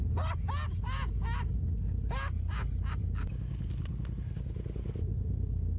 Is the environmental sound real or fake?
real